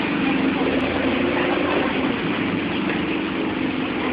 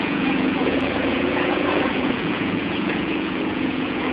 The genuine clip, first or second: first